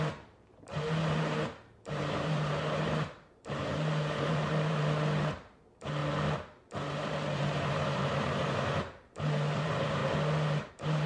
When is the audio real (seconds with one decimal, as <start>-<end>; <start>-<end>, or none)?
6.0-7.1; 10.0-10.7